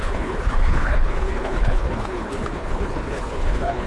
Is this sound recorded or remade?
remade